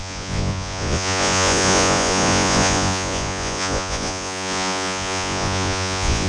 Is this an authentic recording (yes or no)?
no